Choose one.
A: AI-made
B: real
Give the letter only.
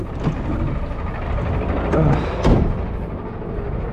B